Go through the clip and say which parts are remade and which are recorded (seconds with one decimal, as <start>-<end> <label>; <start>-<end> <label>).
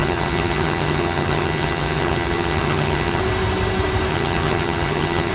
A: 0.0-3.2 remade; 3.2-4.1 recorded; 4.1-5.3 remade